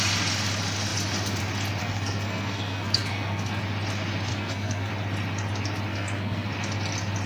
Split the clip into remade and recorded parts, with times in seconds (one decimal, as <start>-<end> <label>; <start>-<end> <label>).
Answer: 0.0-1.8 recorded; 1.8-3.6 remade; 3.6-4.3 recorded; 4.3-4.9 remade; 4.9-5.9 recorded; 5.9-6.5 remade; 6.5-7.3 recorded